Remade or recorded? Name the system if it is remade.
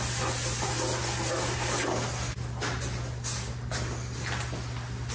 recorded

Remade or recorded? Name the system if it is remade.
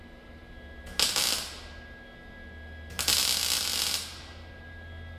recorded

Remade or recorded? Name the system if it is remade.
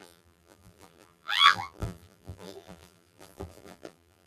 remade, vocoder, BigVGAN v2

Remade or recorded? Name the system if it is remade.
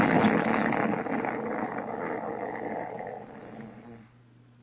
recorded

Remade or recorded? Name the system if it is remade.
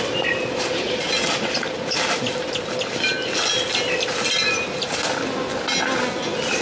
recorded